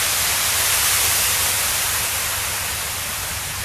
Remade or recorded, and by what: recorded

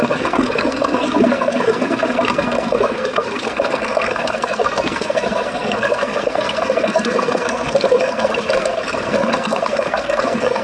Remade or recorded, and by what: remade, codec, SNAC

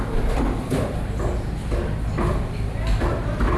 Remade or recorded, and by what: recorded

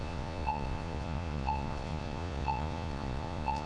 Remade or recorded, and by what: remade, vocoder, Vocos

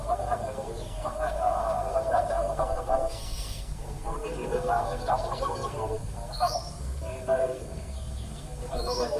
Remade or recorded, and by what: remade, codec, SNAC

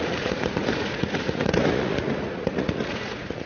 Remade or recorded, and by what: remade, vocoder, Vocos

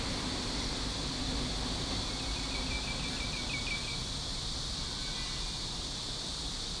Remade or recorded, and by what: recorded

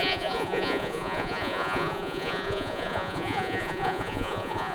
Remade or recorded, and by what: remade, vocoder, Vocos